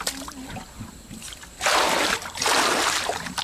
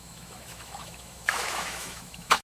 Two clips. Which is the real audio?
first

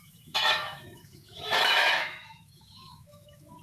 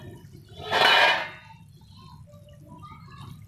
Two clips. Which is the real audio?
second